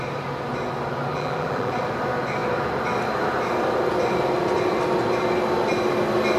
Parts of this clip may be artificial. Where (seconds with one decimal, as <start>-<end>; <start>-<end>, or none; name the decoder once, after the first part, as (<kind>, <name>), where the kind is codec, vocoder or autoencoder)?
1.1-1.7 (vocoder, BigVGAN v2)